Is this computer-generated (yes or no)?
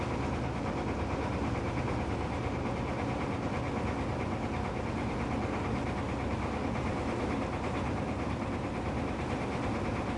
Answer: no